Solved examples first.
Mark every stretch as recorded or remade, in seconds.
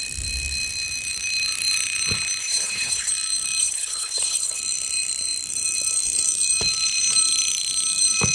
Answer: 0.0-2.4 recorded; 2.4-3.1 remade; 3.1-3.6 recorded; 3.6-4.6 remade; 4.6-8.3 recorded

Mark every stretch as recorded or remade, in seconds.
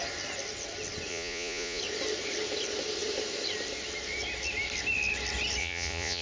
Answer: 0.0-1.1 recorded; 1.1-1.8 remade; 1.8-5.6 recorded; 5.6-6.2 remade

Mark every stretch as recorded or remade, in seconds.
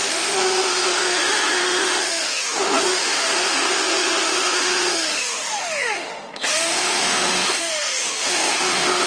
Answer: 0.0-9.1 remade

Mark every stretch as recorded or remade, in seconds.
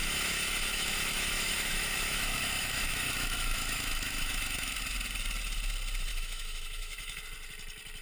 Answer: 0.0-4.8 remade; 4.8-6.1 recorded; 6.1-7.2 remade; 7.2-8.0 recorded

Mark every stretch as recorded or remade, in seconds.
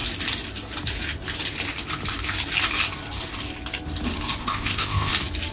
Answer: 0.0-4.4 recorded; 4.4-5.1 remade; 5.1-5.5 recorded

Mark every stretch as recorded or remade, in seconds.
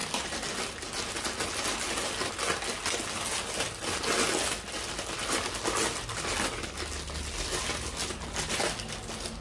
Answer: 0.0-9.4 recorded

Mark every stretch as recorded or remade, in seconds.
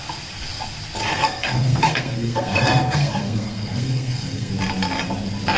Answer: 0.0-1.1 recorded; 1.1-4.5 remade; 4.5-5.6 recorded